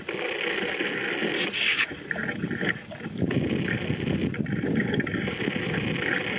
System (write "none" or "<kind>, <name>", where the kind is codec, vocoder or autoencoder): none